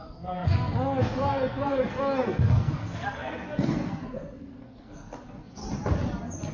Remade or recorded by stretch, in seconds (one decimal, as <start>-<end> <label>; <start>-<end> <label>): 0.0-5.6 remade; 5.6-6.5 recorded